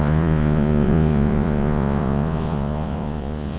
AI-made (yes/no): yes